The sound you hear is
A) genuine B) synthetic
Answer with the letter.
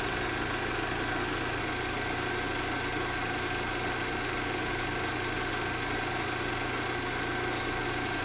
A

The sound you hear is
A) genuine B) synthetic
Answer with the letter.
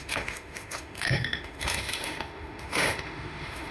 B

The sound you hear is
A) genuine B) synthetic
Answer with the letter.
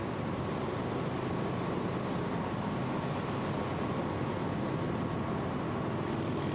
A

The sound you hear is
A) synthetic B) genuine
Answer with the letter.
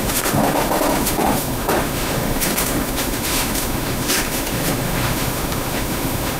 A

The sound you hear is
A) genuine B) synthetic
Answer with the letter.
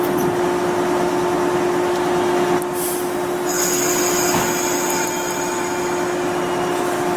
A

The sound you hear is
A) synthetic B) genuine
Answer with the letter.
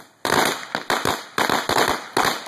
B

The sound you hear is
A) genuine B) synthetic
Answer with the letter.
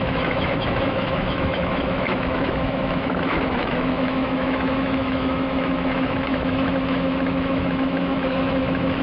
B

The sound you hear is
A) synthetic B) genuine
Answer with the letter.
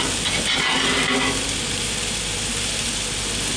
B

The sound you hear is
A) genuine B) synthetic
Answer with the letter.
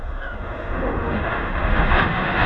B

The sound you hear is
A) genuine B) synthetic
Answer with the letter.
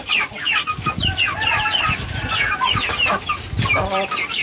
A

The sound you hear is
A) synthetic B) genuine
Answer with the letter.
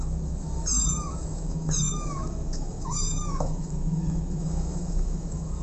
A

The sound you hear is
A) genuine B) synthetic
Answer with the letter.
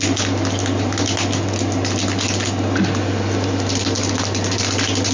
A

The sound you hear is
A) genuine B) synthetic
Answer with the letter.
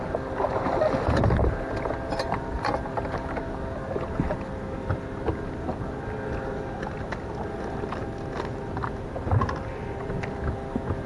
A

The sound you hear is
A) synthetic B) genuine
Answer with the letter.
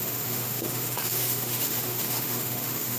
A